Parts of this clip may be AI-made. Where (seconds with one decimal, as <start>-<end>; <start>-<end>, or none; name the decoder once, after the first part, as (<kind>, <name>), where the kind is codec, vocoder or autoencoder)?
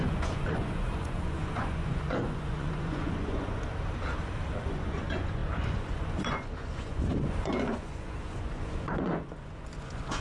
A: 0.0-3.7 (vocoder, Vocos); 4.7-10.2